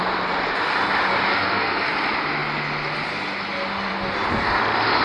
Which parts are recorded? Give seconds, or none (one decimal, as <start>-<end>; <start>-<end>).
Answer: 0.0-1.3; 1.9-5.0